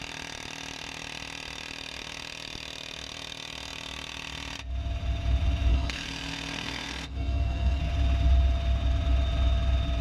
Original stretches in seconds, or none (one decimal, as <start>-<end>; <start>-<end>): 0.0-5.7; 7.8-10.0